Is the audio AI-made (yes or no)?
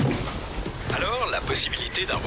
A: no